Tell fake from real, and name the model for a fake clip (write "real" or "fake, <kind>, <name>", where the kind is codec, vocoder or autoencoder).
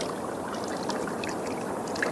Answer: real